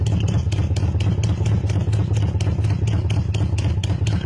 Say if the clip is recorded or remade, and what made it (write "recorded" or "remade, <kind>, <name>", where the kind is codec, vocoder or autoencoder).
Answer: recorded